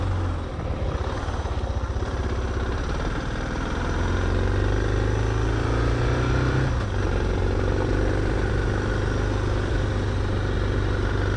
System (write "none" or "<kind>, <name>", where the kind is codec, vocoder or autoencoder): none